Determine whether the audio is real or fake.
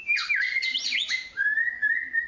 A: real